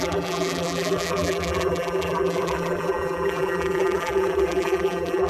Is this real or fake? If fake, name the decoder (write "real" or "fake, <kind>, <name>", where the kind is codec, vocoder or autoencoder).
fake, vocoder, BigVGAN v2